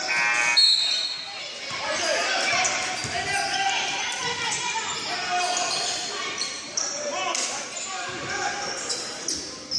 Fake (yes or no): no